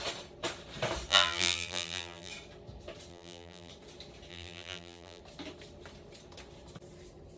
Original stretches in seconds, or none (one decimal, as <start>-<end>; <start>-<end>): 0.0-1.1; 2.3-3.1; 3.7-4.3; 5.2-7.4